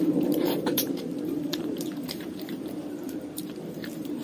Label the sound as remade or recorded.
remade